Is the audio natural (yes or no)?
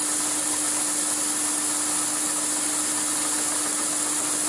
yes